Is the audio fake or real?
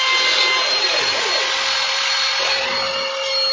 real